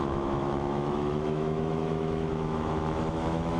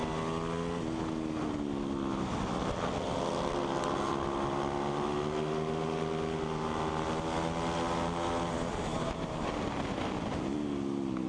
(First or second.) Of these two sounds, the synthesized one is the first